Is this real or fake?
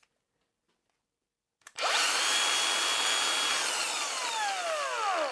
fake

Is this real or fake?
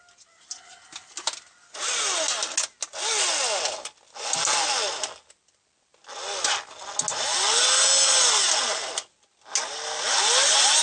real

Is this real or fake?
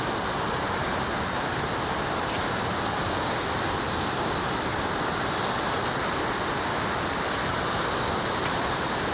real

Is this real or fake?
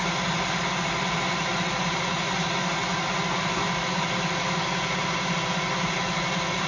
real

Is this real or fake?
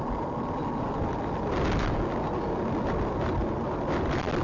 fake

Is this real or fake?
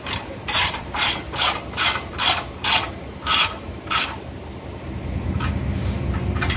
fake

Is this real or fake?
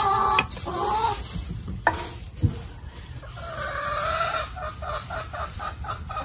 real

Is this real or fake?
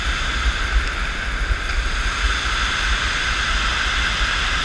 real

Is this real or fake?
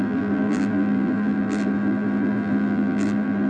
fake